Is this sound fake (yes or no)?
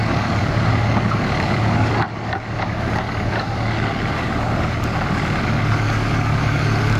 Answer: yes